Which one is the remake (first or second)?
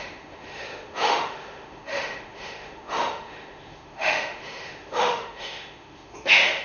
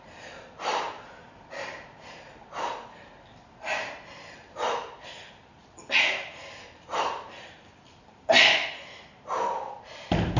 first